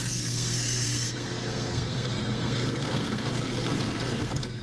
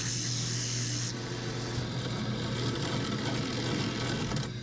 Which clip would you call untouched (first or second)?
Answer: second